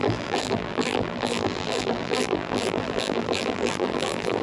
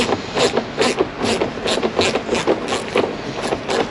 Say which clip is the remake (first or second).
first